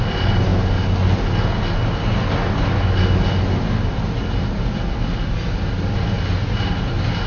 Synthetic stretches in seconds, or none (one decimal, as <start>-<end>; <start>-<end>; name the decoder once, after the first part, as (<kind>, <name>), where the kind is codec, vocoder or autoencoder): none